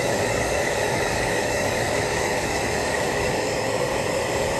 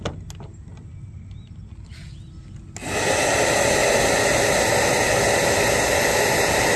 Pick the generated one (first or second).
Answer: first